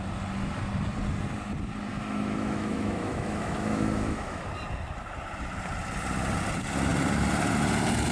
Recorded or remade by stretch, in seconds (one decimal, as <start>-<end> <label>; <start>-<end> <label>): 0.0-1.9 recorded; 1.9-4.5 remade; 4.5-8.1 recorded